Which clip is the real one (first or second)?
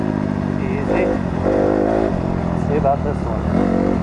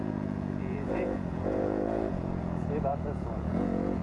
first